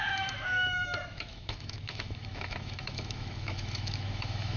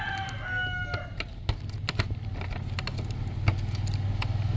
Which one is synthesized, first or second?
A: first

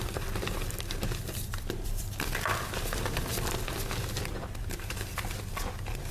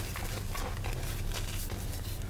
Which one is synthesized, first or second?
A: first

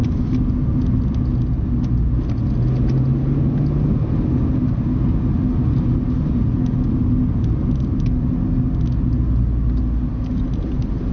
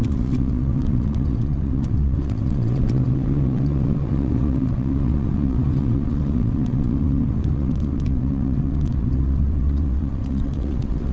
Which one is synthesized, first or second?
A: second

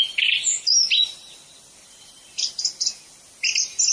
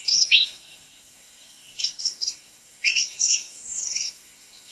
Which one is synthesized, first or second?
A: second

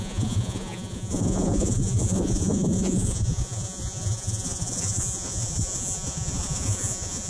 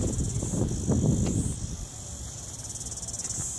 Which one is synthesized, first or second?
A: first